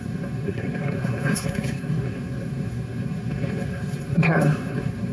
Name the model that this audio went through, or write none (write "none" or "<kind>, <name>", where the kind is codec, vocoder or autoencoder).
codec, SNAC